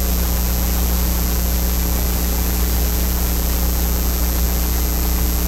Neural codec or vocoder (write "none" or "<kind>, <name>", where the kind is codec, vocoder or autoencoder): none